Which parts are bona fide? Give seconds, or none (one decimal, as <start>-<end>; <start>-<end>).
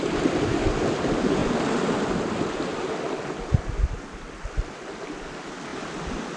0.0-6.4